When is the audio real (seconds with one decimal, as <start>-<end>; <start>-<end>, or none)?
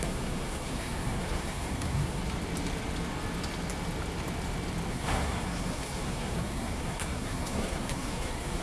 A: 2.2-4.9